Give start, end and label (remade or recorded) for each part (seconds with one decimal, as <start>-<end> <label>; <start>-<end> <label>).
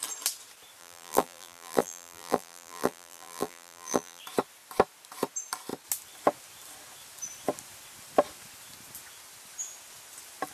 0.0-0.8 recorded; 0.8-4.2 remade; 4.2-10.5 recorded